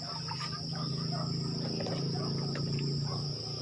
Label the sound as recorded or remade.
recorded